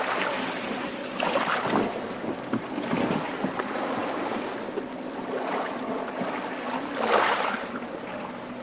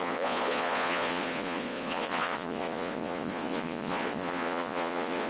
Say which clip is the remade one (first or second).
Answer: second